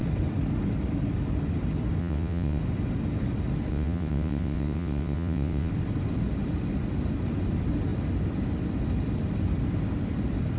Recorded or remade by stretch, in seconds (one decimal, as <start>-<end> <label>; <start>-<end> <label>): 0.0-2.0 recorded; 2.0-2.6 remade; 2.6-3.7 recorded; 3.7-5.7 remade; 5.7-10.6 recorded